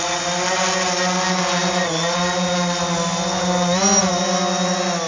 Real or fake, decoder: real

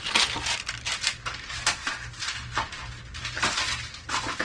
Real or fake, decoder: real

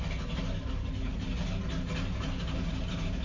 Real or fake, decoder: real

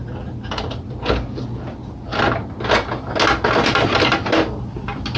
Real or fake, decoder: real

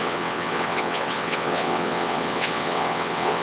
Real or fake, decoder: fake, vocoder, WaveNeXt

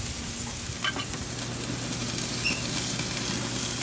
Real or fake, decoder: real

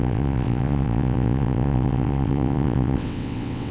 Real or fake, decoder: fake, vocoder, WaveNeXt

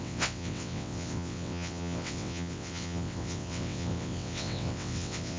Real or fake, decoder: fake, vocoder, WaveNeXt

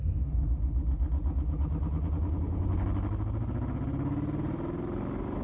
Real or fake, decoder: real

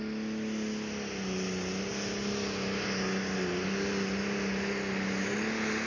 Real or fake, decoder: real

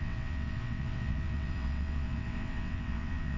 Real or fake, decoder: fake, vocoder, WaveNeXt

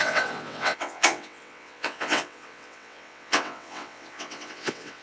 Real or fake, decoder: fake, vocoder, WaveNeXt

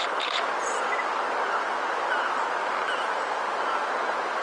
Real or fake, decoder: real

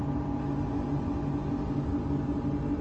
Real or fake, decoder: real